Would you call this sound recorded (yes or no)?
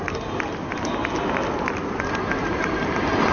yes